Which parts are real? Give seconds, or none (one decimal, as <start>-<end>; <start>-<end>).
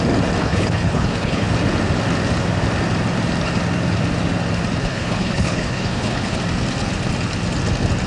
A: 0.0-0.4; 1.5-4.8; 6.4-8.1